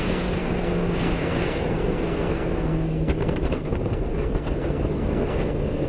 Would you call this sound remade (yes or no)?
yes